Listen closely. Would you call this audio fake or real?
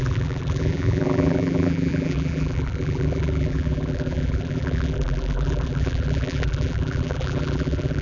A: fake